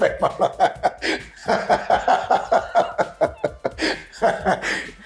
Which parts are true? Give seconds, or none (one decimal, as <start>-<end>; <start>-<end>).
0.0-1.4; 2.0-5.1